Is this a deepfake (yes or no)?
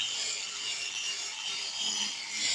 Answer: yes